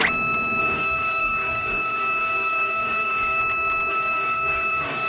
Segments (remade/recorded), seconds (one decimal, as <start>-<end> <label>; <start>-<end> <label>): 0.0-0.6 recorded; 0.6-3.4 remade; 3.4-3.9 recorded; 3.9-5.1 remade